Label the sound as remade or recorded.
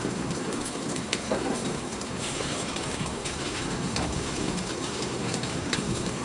remade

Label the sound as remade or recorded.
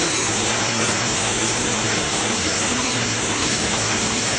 remade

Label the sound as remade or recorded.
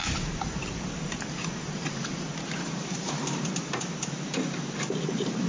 remade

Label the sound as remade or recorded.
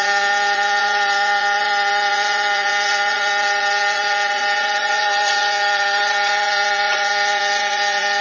remade